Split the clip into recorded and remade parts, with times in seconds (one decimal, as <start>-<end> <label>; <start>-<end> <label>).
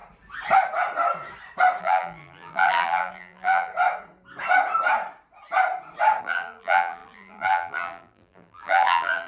0.0-1.8 recorded; 1.8-3.7 remade; 3.7-6.2 recorded; 6.2-9.3 remade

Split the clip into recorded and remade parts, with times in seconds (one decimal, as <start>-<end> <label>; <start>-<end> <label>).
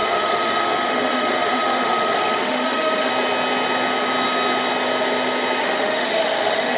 0.0-3.1 remade; 3.1-5.6 recorded; 5.6-6.8 remade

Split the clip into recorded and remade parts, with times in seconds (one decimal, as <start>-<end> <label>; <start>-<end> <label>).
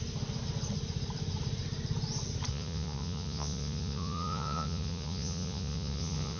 0.0-2.5 recorded; 2.5-6.4 remade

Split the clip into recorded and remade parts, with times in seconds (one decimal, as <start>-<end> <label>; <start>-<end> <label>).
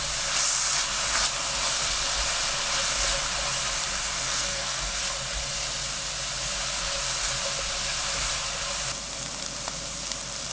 0.0-4.1 recorded; 4.1-5.0 remade; 5.0-10.5 recorded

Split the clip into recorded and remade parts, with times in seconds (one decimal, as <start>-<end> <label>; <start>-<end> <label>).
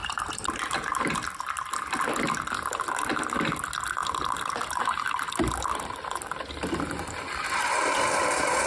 0.0-8.7 recorded